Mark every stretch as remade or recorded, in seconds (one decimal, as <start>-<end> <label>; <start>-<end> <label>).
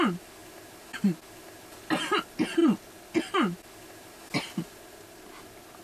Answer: 0.0-5.8 recorded